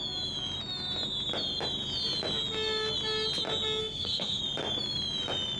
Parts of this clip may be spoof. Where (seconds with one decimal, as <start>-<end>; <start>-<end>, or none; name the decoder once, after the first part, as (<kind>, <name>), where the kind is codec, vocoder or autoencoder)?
3.8-4.4 (codec, SNAC)